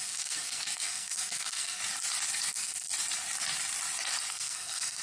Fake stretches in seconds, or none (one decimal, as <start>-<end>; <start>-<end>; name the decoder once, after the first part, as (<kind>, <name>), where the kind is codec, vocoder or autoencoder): 0.0-1.8 (codec, SNAC); 2.5-2.9; 4.3-5.0